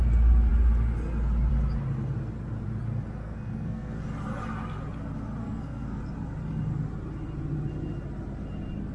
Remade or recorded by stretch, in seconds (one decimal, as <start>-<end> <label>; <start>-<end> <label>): 0.0-3.2 recorded; 3.2-4.0 remade; 4.0-5.4 recorded; 5.4-6.0 remade; 6.0-8.9 recorded